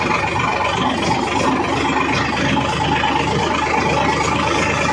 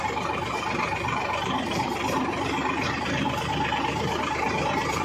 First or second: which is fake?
second